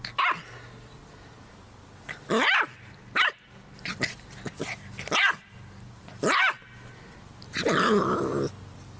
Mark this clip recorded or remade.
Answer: recorded